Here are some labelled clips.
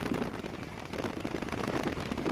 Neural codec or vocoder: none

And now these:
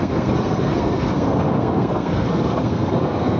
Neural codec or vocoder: codec, SNAC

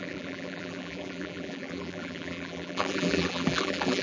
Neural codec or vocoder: vocoder, BigVGAN v2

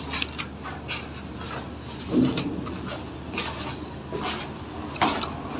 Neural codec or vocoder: none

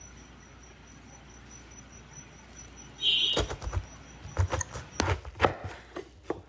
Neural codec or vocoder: none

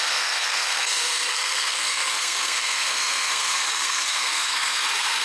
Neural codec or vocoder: codec, SNAC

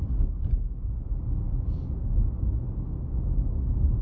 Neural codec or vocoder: none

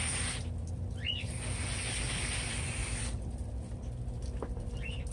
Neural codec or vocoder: vocoder, BigVGAN v2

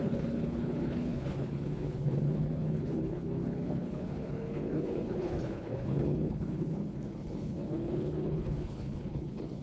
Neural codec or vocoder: codec, HILCodec